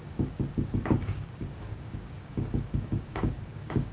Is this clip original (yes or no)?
no